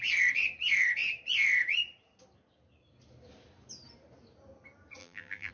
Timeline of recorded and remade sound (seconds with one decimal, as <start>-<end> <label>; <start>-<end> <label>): 0.0-5.0 recorded; 5.0-5.5 remade